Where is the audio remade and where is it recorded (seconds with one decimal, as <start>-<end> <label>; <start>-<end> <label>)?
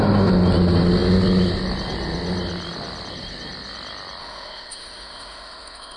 0.0-4.2 recorded; 4.2-6.0 remade